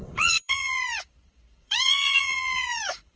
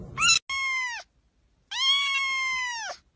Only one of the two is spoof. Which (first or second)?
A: first